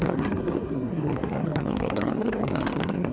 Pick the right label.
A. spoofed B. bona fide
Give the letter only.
A